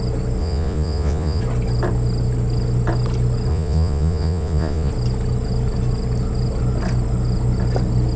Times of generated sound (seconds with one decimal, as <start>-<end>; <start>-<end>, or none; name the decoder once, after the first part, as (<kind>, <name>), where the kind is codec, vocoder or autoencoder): 0.4-1.4 (vocoder, Vocos); 3.5-4.9